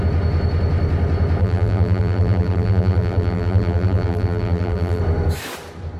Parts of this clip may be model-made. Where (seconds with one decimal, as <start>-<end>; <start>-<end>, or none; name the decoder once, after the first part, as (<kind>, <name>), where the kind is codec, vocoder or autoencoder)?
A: 1.4-5.0 (vocoder, BigVGAN v2)